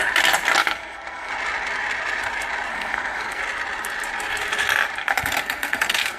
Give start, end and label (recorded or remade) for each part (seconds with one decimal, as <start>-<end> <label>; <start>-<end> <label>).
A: 0.0-0.6 recorded; 0.6-1.3 remade; 1.3-2.7 recorded; 2.7-3.4 remade; 3.4-5.0 recorded; 5.0-6.2 remade

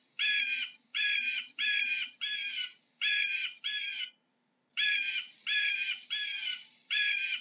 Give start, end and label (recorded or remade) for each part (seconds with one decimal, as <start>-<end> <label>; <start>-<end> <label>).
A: 0.0-0.9 recorded; 0.9-4.9 remade; 4.9-5.6 recorded; 5.6-7.4 remade

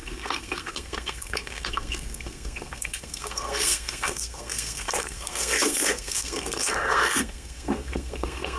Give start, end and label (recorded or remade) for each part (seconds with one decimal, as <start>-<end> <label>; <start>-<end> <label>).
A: 0.0-8.6 remade